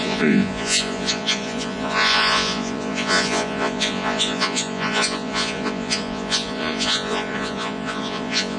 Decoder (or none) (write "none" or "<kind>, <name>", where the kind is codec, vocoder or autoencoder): vocoder, Vocos